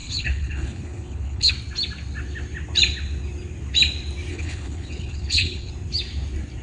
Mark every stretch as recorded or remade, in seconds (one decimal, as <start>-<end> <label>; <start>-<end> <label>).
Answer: 0.0-1.5 remade; 1.5-4.3 recorded; 4.3-5.7 remade; 5.7-6.6 recorded